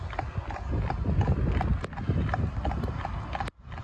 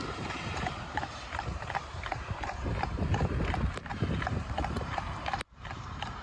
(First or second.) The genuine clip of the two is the first